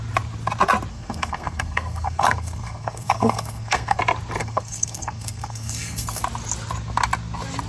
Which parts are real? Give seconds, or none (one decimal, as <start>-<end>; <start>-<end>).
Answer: 0.0-0.9; 4.0-4.4; 6.2-7.7